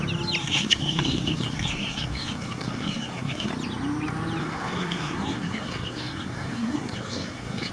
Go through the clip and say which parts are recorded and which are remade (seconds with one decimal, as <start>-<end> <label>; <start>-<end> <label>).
0.0-0.4 recorded; 0.4-3.5 remade; 3.5-4.4 recorded; 4.4-7.7 remade

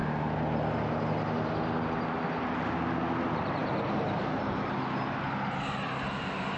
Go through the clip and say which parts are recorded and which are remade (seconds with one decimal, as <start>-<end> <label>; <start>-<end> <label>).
0.0-6.6 recorded

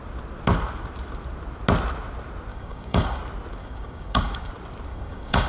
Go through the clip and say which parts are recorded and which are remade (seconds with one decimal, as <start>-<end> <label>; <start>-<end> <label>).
0.0-2.5 recorded; 2.5-3.2 remade; 3.2-3.6 recorded; 3.6-4.5 remade; 4.5-4.9 recorded; 4.9-5.5 remade

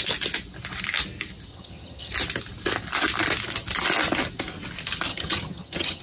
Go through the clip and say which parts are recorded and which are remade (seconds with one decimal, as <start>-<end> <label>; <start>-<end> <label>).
0.0-1.5 recorded; 1.5-2.1 remade; 2.1-5.1 recorded; 5.1-6.0 remade

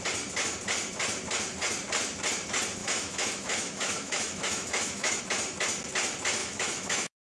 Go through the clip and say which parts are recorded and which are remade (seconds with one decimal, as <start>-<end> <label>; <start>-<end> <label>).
0.0-2.8 recorded; 2.8-5.2 remade; 5.2-6.4 recorded; 6.4-7.2 remade

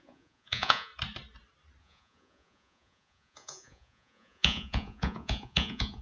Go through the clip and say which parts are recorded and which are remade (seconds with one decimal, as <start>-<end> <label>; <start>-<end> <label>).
0.0-0.9 remade; 0.9-1.8 recorded; 1.8-6.0 remade

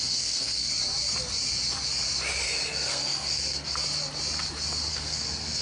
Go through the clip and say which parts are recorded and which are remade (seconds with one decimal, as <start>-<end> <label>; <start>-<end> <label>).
0.0-0.7 remade; 0.7-2.7 recorded; 2.7-3.8 remade; 3.8-4.9 recorded; 4.9-5.6 remade